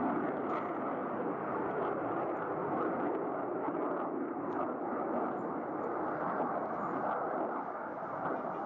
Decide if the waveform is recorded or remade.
recorded